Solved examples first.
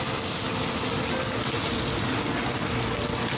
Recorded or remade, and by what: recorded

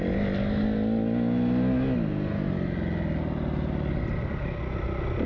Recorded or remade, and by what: recorded